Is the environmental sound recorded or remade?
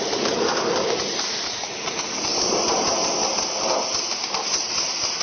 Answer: recorded